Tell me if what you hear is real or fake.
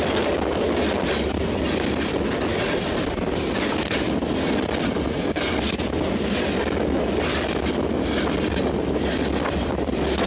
real